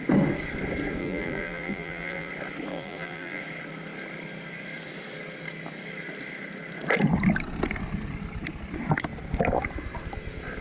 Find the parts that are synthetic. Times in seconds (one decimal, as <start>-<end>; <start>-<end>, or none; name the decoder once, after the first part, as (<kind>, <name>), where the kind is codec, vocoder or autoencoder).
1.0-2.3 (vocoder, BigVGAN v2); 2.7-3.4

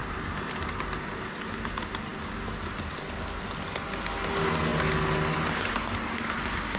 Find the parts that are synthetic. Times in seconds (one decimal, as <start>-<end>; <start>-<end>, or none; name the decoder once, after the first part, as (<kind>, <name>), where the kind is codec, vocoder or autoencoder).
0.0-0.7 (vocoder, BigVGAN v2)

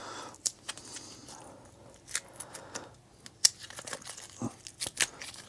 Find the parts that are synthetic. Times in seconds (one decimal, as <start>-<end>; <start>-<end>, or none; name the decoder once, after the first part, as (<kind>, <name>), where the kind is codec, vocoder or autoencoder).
0.0-0.7 (vocoder, BigVGAN v2)

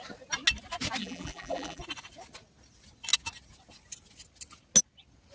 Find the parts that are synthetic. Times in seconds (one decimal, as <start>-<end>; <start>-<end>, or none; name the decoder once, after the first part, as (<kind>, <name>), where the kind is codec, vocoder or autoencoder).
1.0-1.8 (vocoder, BigVGAN v2)

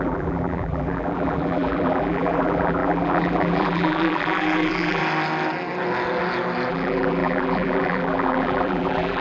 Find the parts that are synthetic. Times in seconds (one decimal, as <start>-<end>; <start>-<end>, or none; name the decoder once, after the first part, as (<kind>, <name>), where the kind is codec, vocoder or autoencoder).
0.0-5.0 (vocoder, BigVGAN v2); 6.7-9.2